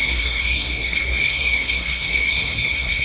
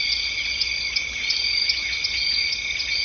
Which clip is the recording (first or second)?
second